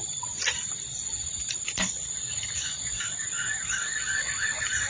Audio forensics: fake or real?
fake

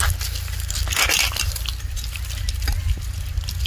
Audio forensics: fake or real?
real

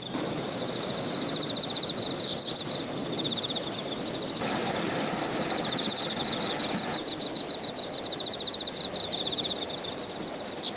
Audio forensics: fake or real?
real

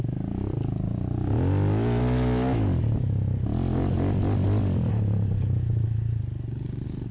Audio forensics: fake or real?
real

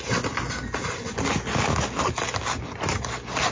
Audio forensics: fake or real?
real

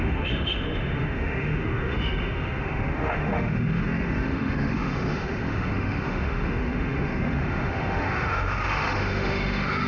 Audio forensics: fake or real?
fake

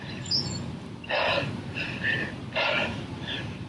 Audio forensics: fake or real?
real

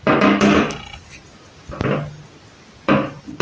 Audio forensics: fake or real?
real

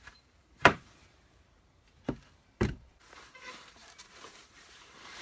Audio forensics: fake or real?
fake